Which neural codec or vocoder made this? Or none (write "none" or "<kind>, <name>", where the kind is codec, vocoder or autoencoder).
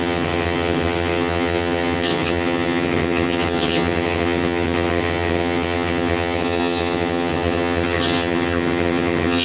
vocoder, HiFi-GAN